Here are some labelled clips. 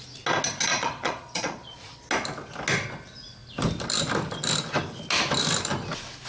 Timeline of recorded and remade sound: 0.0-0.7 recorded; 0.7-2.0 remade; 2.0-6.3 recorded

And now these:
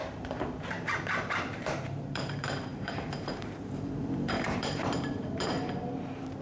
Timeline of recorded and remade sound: 0.0-6.4 remade

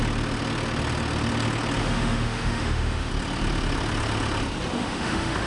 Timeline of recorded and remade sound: 0.0-1.8 recorded; 1.8-3.1 remade; 3.1-4.7 recorded; 4.7-5.5 remade